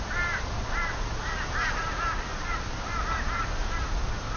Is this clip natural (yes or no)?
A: yes